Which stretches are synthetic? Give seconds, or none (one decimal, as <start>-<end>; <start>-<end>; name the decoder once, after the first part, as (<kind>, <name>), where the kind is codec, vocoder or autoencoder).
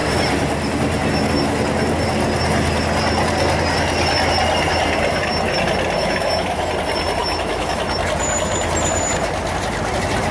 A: 6.0-6.7 (autoencoder, DAC-VAE); 7.2-7.8